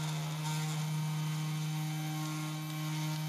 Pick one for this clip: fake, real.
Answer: real